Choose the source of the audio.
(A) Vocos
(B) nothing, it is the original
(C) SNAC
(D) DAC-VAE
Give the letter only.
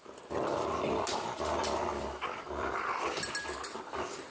B